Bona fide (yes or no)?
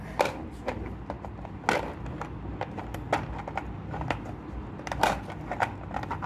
yes